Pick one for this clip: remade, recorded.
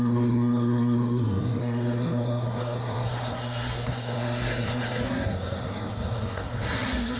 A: remade